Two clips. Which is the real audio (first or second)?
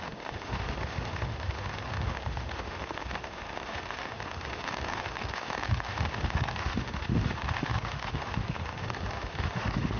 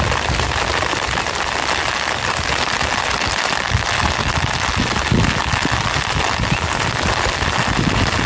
second